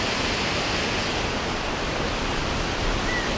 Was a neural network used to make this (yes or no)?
no